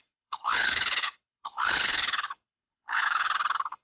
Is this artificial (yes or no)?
yes